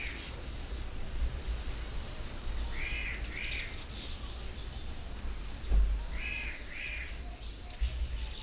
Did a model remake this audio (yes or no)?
no